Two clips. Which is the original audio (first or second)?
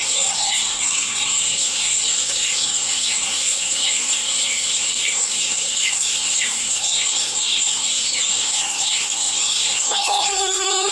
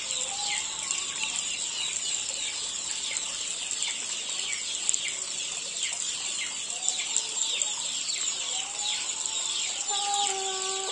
second